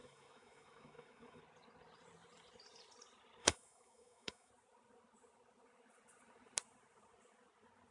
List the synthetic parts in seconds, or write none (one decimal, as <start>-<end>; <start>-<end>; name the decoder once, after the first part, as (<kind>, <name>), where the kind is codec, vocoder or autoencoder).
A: 0.0-1.4 (autoencoder, DAC-VAE); 3.4-4.5